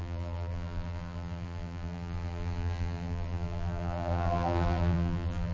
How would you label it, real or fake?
fake